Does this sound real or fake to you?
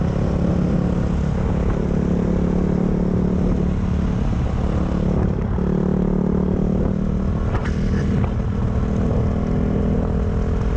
real